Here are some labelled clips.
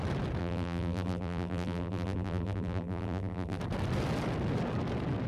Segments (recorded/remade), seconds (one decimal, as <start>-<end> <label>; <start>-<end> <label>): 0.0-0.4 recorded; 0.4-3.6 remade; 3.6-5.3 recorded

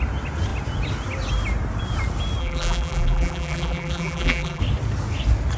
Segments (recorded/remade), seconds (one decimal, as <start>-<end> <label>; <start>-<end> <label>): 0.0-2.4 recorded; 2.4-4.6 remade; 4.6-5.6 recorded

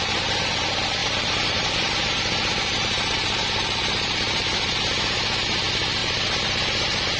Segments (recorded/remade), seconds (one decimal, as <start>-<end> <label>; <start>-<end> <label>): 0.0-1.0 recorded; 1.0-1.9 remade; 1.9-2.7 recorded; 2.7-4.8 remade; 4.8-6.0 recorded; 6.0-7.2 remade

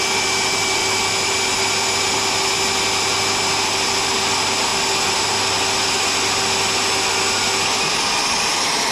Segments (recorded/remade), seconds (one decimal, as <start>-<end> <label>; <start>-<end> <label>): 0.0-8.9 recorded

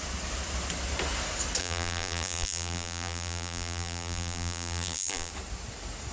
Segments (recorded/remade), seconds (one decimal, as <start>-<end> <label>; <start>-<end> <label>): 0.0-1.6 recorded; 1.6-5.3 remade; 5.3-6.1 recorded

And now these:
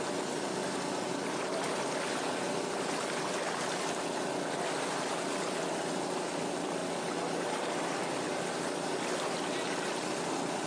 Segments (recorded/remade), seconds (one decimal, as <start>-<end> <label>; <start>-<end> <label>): 0.0-10.7 recorded

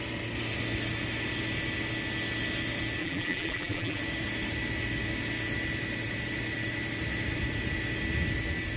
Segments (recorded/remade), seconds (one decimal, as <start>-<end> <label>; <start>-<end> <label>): 0.0-3.0 recorded; 3.0-4.0 remade; 4.0-8.8 recorded